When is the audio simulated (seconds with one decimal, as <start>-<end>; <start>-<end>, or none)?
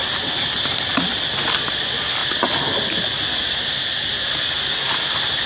0.0-0.9